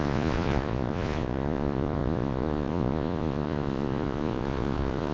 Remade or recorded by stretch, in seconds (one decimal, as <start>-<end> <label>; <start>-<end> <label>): 0.0-5.1 remade